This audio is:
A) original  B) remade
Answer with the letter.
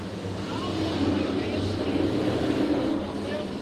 A